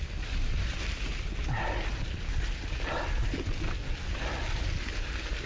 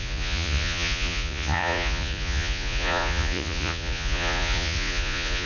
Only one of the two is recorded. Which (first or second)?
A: first